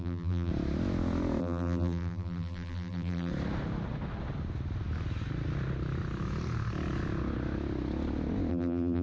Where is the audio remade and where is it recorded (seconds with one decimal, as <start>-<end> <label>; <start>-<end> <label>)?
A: 0.0-0.5 remade; 0.5-1.4 recorded; 1.4-3.3 remade; 3.3-8.5 recorded; 8.5-9.0 remade

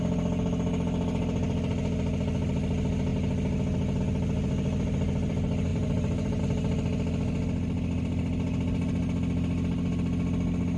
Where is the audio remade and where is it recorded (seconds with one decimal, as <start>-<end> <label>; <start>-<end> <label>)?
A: 0.0-5.7 recorded; 5.7-6.4 remade; 6.4-10.8 recorded

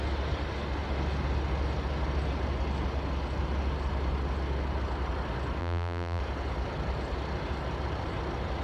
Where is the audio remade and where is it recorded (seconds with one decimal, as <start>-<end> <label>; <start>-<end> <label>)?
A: 0.0-5.6 recorded; 5.6-6.2 remade; 6.2-8.6 recorded

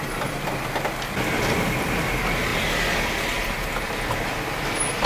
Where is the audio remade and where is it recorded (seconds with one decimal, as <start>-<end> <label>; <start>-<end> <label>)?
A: 0.0-5.1 recorded

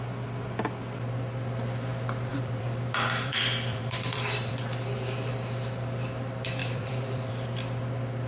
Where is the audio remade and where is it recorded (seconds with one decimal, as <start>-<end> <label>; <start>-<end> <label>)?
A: 0.0-2.3 recorded; 2.3-4.5 remade; 4.5-6.6 recorded; 6.6-7.3 remade; 7.3-8.3 recorded

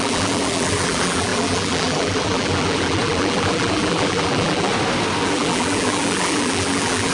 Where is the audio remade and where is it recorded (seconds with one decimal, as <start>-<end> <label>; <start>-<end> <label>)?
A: 0.0-4.7 remade; 4.7-5.2 recorded; 5.2-7.1 remade